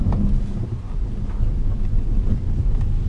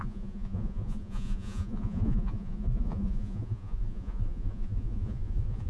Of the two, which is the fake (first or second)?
second